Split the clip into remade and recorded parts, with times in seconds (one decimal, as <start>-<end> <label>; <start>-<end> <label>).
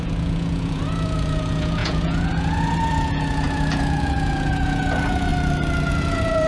0.0-5.3 remade; 5.3-5.9 recorded; 5.9-6.5 remade